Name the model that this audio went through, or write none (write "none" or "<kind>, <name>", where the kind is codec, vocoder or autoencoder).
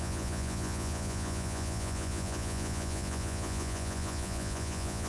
vocoder, Vocos